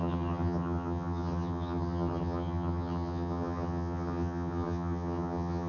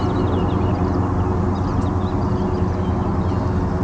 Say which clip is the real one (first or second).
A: second